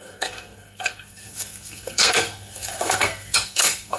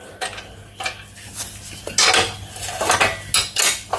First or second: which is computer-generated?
first